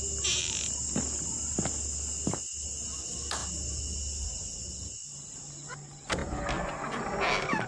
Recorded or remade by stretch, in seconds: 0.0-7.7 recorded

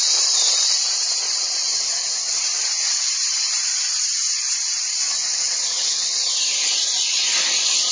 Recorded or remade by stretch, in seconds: 0.0-1.7 recorded; 1.7-2.4 remade; 2.4-5.0 recorded; 5.0-6.2 remade; 6.2-7.9 recorded

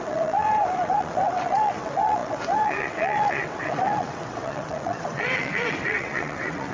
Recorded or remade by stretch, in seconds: 0.0-6.7 remade

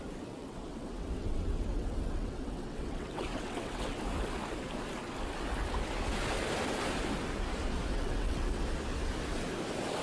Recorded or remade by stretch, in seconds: 0.0-0.4 recorded; 0.4-4.0 remade; 4.0-7.9 recorded; 7.9-8.6 remade; 8.6-10.0 recorded